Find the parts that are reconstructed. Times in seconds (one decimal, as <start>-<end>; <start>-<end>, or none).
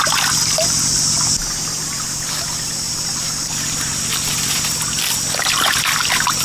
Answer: 4.1-4.8